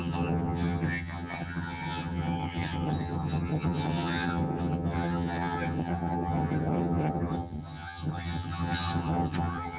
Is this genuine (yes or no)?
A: no